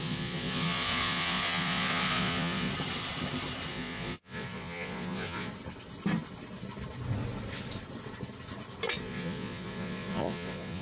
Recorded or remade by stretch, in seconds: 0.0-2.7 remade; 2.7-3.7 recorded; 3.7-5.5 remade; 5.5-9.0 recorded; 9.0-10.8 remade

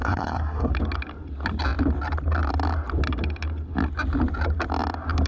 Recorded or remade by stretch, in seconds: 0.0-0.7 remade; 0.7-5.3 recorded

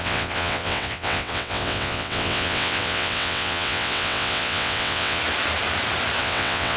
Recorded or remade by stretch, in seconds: 0.0-5.2 remade; 5.2-6.2 recorded; 6.2-6.8 remade